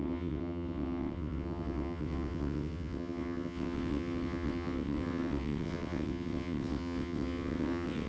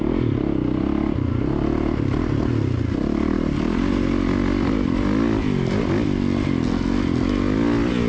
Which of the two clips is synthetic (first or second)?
first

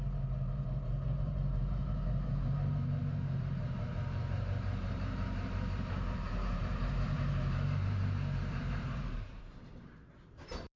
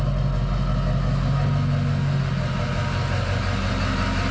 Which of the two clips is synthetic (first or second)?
first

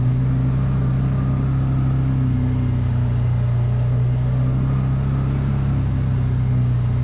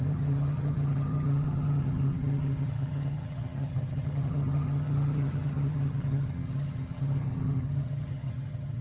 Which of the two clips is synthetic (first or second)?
second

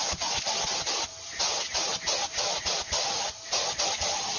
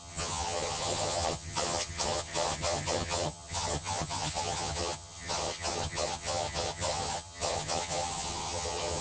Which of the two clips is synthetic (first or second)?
second